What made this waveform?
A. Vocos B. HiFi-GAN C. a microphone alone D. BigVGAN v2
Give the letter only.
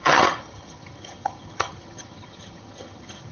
B